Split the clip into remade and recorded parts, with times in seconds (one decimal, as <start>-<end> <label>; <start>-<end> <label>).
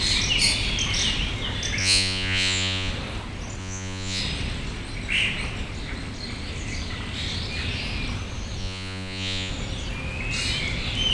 0.0-1.8 recorded; 1.8-2.9 remade; 2.9-3.6 recorded; 3.6-4.2 remade; 4.2-8.6 recorded; 8.6-9.5 remade; 9.5-11.1 recorded